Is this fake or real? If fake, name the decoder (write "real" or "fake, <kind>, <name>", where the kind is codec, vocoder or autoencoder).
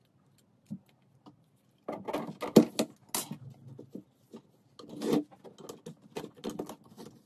real